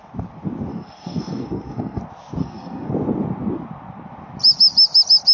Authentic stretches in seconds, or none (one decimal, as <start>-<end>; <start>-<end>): 0.0-0.7; 2.0-2.4; 2.9-5.3